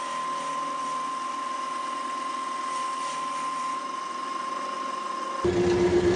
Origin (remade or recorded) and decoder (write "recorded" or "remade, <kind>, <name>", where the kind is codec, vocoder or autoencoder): recorded